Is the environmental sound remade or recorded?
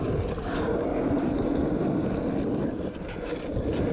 recorded